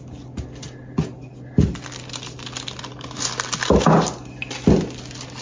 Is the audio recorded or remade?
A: recorded